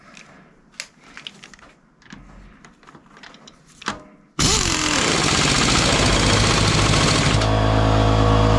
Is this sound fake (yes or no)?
no